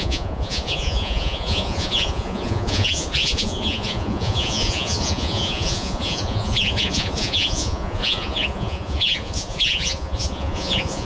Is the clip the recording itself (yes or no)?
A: no